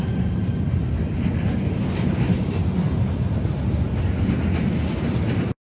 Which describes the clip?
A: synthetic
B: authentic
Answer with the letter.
B